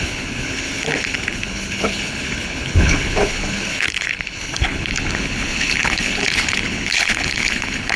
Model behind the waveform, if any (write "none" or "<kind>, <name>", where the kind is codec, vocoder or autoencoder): codec, HILCodec